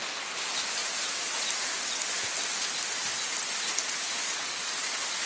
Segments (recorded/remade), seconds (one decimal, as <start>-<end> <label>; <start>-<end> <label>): 0.0-4.2 recorded; 4.2-4.8 remade; 4.8-5.3 recorded